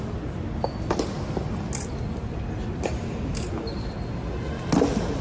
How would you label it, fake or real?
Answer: real